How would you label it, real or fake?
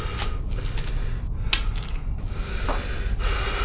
real